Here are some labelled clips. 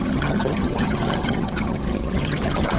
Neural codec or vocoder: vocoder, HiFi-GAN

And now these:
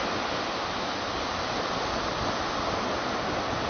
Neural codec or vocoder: none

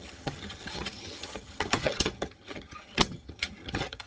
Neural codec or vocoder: vocoder, HiFi-GAN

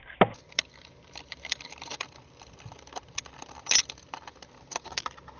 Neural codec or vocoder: none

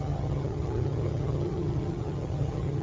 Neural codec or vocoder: vocoder, HiFi-GAN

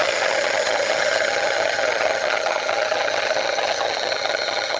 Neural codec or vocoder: vocoder, HiFi-GAN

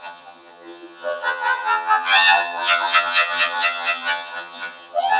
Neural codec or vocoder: vocoder, HiFi-GAN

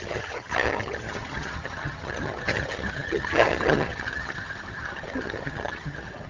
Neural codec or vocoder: vocoder, HiFi-GAN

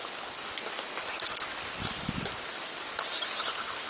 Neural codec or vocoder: none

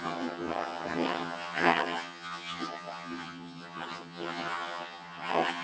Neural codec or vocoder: vocoder, HiFi-GAN